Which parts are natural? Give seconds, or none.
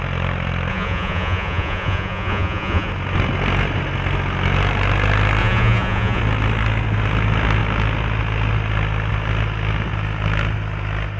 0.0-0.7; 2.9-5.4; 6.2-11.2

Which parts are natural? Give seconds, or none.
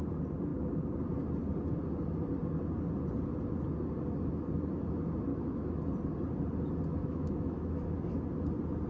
0.0-5.3; 5.8-7.0; 8.3-8.9